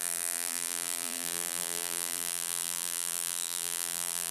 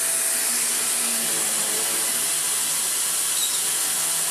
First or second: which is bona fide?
second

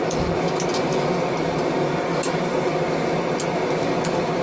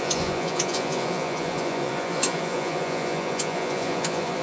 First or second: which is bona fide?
first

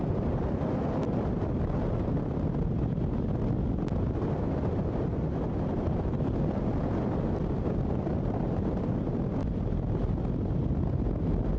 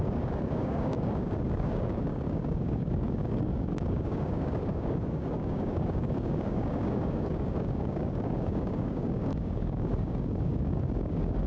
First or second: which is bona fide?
first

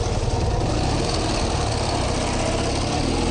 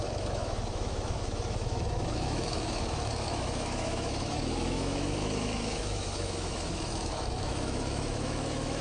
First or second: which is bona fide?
first